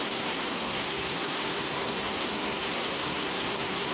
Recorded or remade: remade